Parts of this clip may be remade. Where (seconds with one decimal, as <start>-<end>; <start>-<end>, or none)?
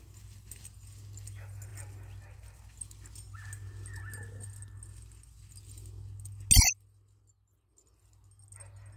none